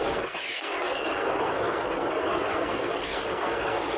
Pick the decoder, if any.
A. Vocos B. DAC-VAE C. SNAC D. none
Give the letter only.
C